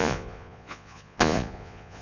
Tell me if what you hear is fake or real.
fake